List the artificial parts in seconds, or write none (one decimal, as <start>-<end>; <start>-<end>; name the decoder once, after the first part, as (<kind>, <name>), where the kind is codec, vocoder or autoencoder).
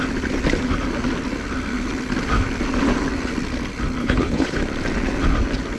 4.0-4.6 (codec, HILCodec)